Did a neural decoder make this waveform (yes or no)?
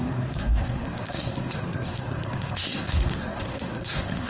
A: yes